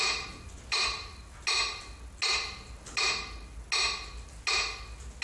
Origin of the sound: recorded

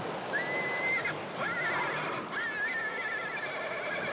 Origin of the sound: recorded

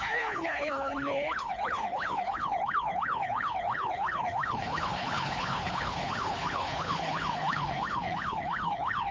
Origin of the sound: remade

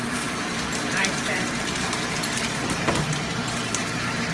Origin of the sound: remade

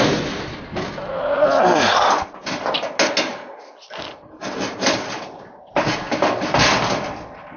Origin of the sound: recorded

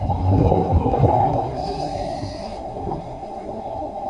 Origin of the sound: remade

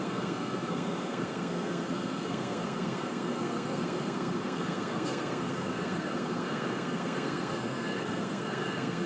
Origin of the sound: remade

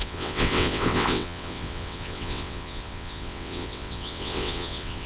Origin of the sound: remade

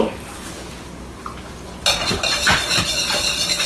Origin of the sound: recorded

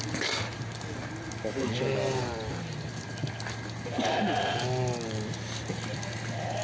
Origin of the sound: recorded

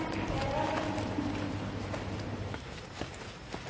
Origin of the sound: recorded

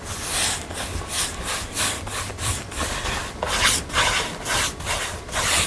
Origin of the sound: recorded